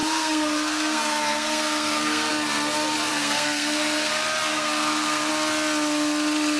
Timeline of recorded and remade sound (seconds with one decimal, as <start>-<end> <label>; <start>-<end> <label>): 0.0-2.3 remade; 2.3-3.1 recorded; 3.1-4.1 remade; 4.1-4.5 recorded; 4.5-5.3 remade; 5.3-6.6 recorded